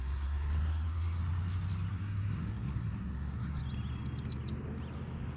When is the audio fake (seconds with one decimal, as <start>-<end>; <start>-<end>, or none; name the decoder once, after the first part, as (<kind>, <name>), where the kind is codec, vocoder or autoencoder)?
0.0-1.2 (codec, SNAC); 1.9-3.6